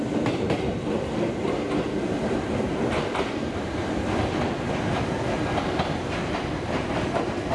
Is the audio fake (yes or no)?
no